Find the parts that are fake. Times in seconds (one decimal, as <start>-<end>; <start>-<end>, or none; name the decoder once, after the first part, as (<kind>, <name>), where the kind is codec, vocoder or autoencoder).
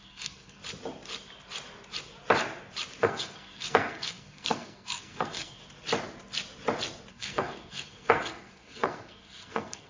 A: 0.0-0.6 (codec, SNAC); 3.0-5.6; 7.1-9.9